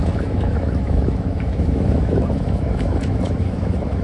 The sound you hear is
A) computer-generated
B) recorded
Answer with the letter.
A